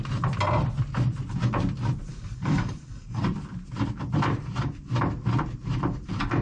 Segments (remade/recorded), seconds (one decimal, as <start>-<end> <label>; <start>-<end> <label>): 0.0-2.1 recorded; 2.1-3.2 remade; 3.2-6.4 recorded

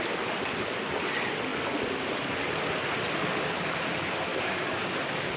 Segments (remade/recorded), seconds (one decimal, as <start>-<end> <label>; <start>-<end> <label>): 0.0-4.3 recorded; 4.3-5.4 remade